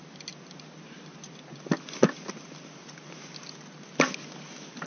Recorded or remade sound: recorded